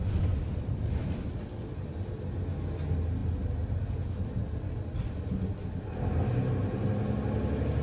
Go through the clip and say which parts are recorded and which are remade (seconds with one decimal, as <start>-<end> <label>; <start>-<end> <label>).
0.0-7.8 recorded